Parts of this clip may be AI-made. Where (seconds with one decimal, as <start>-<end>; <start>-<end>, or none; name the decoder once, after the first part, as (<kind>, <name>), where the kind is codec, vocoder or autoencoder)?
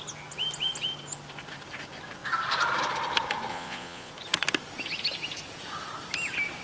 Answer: 3.5-4.1 (vocoder, Vocos)